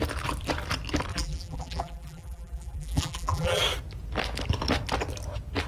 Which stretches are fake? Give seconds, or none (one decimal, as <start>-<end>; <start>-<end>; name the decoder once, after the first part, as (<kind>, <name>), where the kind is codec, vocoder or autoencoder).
1.1-3.6 (vocoder, BigVGAN v2)